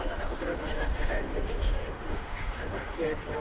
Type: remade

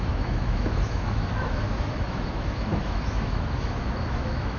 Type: remade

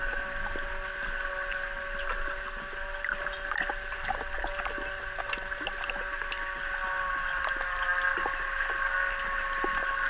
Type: recorded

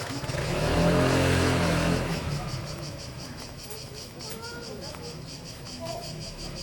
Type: remade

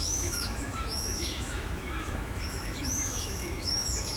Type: remade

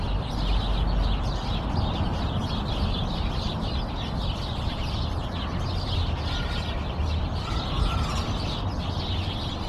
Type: recorded